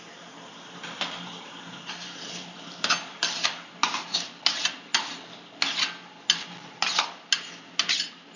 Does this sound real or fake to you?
real